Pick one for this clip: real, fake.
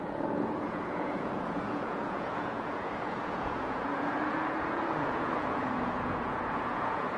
fake